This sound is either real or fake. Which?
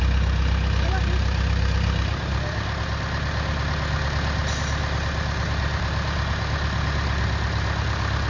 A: real